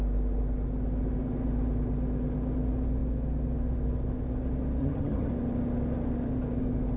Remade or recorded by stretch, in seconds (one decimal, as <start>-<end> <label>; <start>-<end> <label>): 0.0-4.8 recorded; 4.8-5.3 remade; 5.3-7.0 recorded